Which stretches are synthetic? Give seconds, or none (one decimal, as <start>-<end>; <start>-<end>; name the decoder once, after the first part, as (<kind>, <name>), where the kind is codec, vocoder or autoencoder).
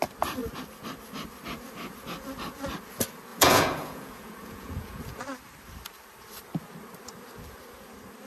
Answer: 3.3-5.2 (vocoder, Vocos)